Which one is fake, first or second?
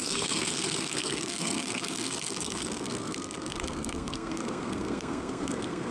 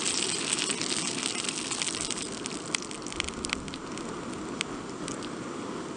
first